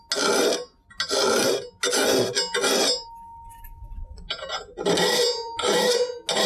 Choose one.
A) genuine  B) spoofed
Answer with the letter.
A